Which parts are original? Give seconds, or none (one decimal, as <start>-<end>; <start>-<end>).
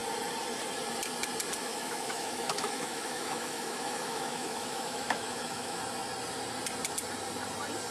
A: 0.0-1.6; 5.8-7.9